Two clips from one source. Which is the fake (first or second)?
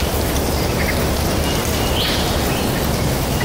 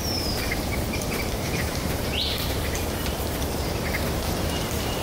second